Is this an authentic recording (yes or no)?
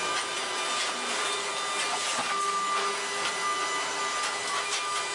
yes